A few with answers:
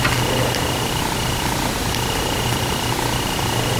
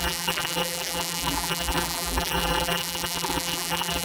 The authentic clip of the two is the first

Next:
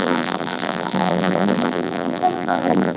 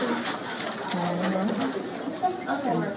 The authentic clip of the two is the second